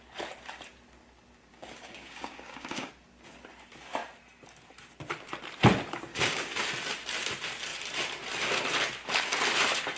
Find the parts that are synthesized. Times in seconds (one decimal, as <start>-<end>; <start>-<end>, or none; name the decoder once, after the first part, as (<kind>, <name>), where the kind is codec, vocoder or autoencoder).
1.5-2.9 (codec, DAC); 6.1-6.6